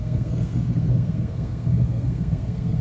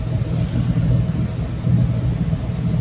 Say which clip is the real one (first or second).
second